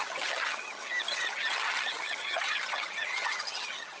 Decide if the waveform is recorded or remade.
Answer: remade